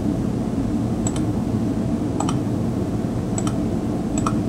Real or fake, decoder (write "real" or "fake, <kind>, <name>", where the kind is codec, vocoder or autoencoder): real